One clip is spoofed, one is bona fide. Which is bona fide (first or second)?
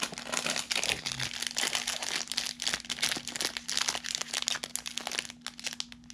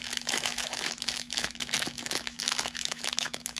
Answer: first